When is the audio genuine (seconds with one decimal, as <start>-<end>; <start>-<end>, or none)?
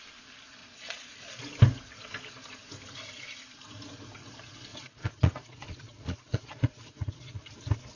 0.0-0.6; 1.5-4.7; 7.5-8.0